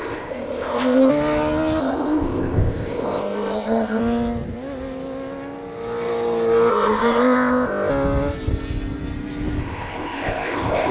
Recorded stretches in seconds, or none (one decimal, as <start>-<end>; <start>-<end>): 1.1-1.8; 4.0-6.7; 7.9-9.6